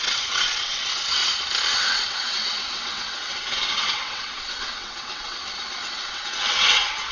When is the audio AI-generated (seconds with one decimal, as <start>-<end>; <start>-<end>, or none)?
0.0-1.2; 1.7-5.4; 5.9-7.1